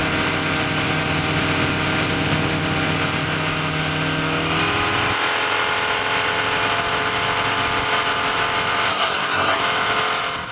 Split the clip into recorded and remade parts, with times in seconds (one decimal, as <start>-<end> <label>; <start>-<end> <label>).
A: 0.0-8.9 recorded; 8.9-9.6 remade; 9.6-10.5 recorded